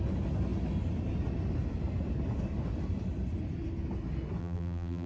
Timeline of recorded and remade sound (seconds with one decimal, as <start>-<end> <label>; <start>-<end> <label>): 0.0-4.4 recorded; 4.4-5.1 remade